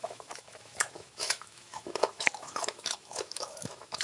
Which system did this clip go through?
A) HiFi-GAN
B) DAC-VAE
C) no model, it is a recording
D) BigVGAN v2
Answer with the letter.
B